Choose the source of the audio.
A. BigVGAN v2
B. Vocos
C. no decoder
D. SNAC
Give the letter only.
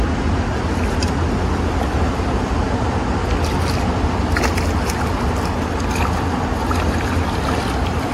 C